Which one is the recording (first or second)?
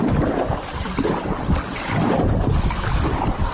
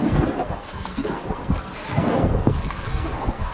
first